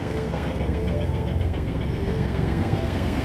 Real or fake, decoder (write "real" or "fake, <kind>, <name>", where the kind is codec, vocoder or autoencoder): fake, codec, SNAC